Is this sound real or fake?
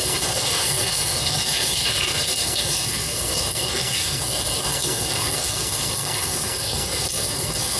fake